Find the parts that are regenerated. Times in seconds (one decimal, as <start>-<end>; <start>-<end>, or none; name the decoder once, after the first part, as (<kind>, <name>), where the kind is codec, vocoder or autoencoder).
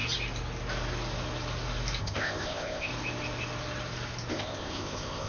2.0-2.9 (codec, ZipCodec); 4.3-5.3